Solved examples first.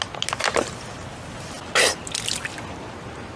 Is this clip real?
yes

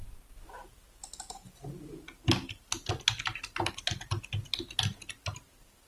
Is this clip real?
yes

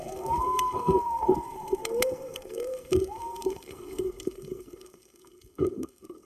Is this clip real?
no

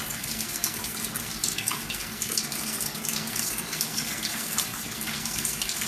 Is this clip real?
no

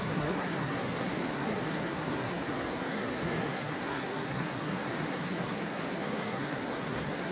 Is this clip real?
no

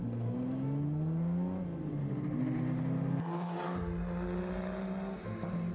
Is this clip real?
yes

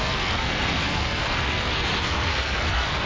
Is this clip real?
no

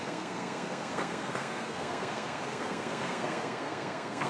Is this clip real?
no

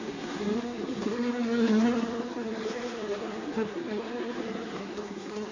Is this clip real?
no